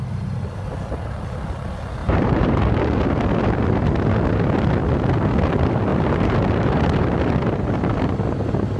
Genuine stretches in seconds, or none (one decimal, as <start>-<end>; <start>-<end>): 0.0-2.0; 2.8-5.9; 6.8-8.8